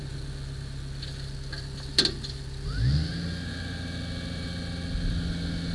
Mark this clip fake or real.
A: real